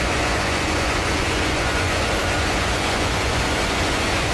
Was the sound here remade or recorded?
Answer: remade